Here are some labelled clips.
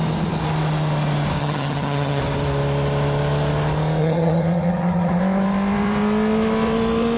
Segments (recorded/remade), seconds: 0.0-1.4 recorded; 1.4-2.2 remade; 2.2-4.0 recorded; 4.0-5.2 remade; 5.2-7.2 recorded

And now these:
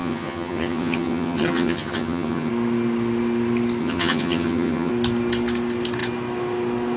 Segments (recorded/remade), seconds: 0.0-2.5 remade; 2.5-3.8 recorded; 3.8-4.9 remade; 4.9-7.0 recorded

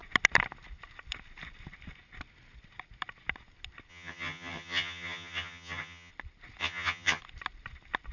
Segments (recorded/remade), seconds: 0.0-3.9 recorded; 3.9-6.1 remade; 6.1-6.6 recorded; 6.6-7.2 remade; 7.2-8.1 recorded

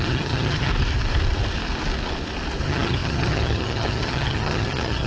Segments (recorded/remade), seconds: 0.0-0.7 remade; 0.7-2.6 recorded; 2.6-5.1 remade

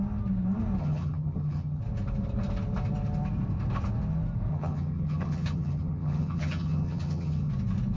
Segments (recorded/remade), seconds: 0.0-0.8 recorded; 0.8-1.8 remade; 1.8-4.5 recorded; 4.5-7.5 remade; 7.5-8.0 recorded